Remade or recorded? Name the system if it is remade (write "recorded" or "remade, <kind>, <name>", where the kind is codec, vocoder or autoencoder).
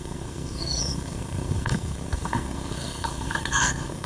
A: remade, codec, SNAC